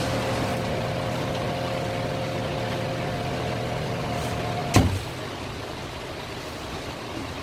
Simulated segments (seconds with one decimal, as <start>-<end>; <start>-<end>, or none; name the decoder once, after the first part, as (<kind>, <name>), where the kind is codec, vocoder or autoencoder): 0.0-0.5 (vocoder, BigVGAN v2); 3.4-4.6; 6.6-7.4

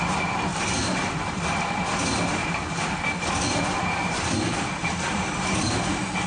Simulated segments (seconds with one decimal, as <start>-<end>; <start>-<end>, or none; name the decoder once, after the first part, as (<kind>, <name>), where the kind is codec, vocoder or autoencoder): 0.5-1.7 (vocoder, BigVGAN v2); 2.4-5.3